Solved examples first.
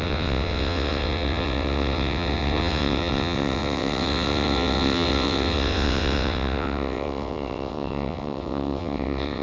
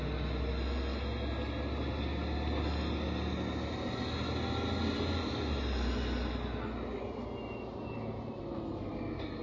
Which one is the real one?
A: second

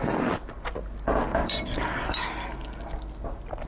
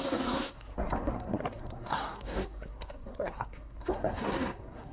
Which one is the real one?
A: first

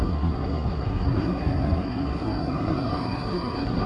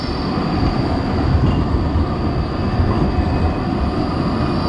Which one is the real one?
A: second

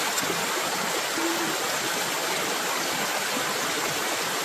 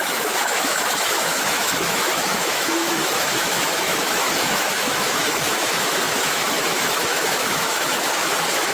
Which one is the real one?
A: first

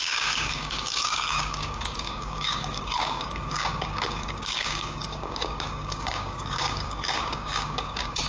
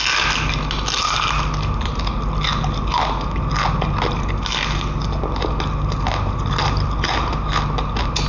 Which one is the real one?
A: second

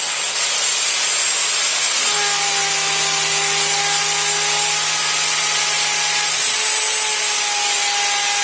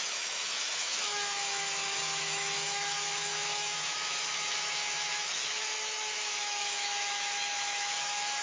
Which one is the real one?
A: first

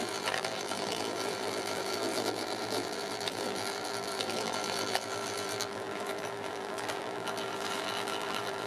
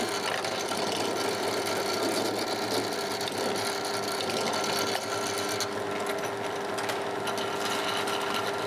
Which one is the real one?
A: second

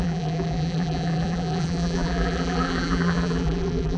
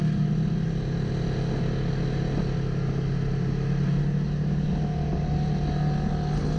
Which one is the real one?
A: second